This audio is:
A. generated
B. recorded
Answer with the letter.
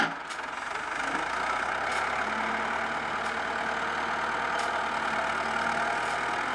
B